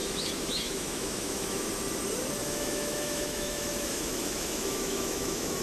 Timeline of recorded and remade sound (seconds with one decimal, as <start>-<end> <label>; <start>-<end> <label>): 0.0-1.6 remade; 1.6-2.4 recorded; 2.4-5.6 remade